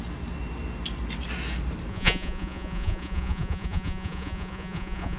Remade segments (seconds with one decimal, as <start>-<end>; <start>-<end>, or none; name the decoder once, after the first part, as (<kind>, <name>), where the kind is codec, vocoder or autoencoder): 1.9-5.2 (vocoder, Vocos)